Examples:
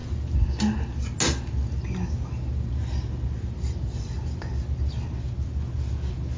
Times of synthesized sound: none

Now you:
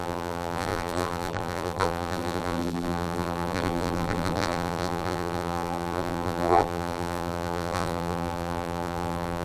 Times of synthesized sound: 0.0-9.4